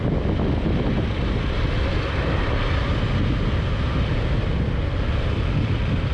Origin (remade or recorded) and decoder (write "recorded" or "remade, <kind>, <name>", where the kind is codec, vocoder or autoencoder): recorded